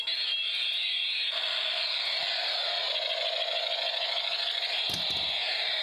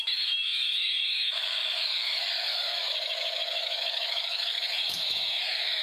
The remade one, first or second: second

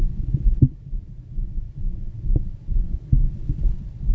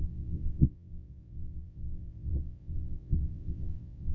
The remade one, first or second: second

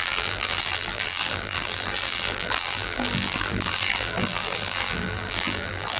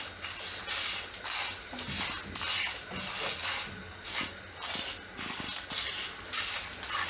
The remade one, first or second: first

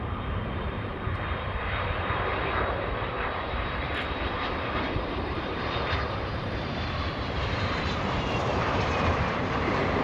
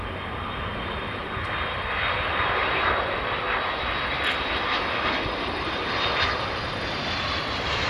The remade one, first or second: first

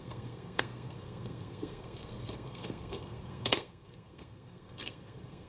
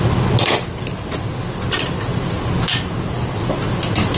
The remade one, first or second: first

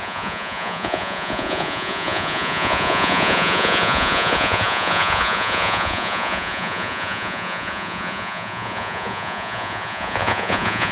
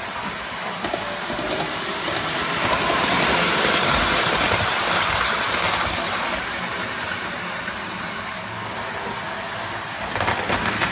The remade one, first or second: first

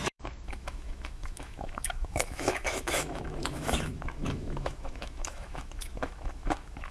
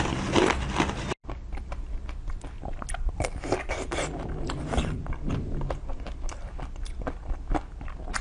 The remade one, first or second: first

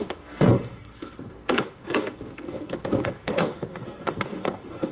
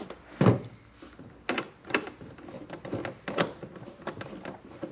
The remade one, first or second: first